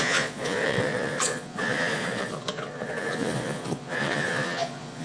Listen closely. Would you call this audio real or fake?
fake